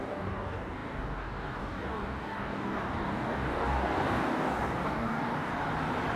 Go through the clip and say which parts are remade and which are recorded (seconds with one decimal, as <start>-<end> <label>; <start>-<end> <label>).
0.0-5.5 remade; 5.5-6.2 recorded